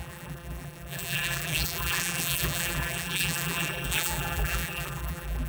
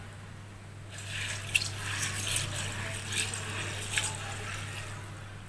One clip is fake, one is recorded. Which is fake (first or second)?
first